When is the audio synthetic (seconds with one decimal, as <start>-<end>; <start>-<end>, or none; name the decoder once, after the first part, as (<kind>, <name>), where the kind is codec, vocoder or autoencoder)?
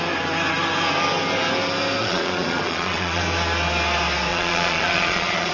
2.0-3.2 (vocoder, Vocos); 4.3-5.5